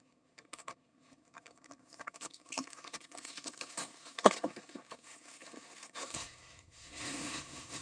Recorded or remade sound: remade